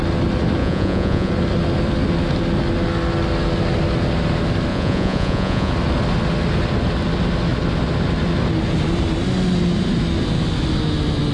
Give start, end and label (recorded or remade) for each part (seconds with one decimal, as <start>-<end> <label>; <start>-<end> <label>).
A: 0.0-0.6 recorded; 0.6-1.3 remade; 1.3-4.7 recorded; 4.7-5.7 remade; 5.7-11.3 recorded